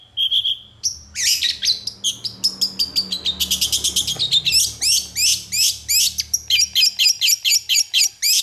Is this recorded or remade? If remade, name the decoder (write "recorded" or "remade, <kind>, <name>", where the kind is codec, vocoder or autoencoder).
recorded